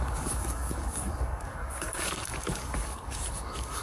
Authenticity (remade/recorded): remade